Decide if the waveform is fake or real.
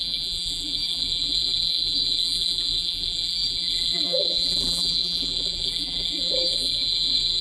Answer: fake